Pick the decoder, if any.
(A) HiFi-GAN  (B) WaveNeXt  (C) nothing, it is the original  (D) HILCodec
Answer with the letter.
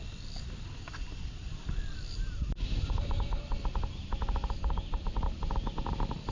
C